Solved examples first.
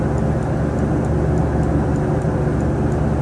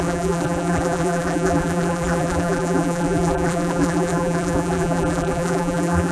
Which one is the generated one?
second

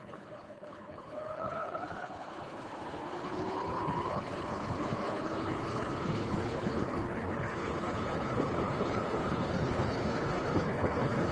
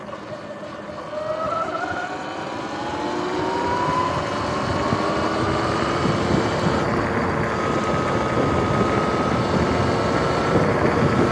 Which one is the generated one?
first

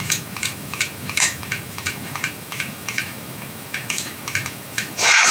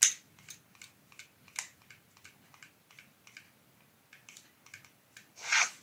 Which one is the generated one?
first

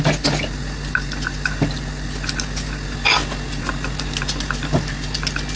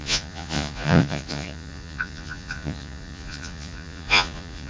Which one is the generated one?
second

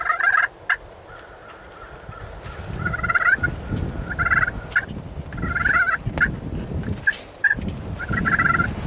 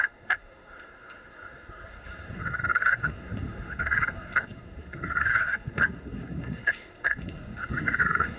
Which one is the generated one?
second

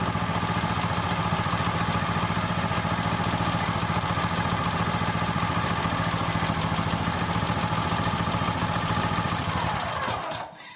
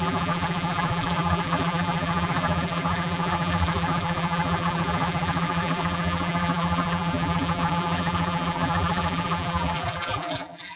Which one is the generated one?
second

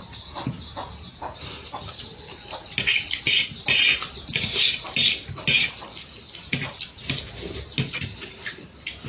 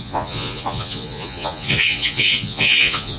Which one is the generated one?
second